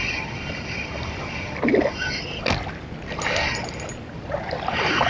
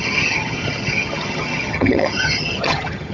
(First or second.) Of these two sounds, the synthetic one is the second